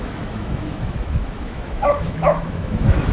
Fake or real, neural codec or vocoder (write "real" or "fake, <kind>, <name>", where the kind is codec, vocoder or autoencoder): fake, autoencoder, DAC-VAE